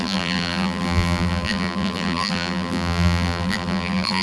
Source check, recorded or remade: remade